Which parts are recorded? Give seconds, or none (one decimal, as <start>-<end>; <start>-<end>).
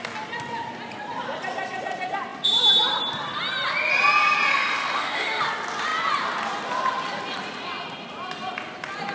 0.0-4.5; 5.4-9.1